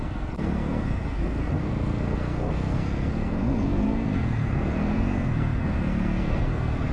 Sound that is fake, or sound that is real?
fake